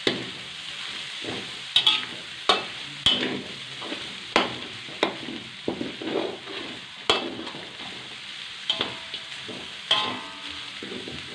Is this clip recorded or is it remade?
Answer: recorded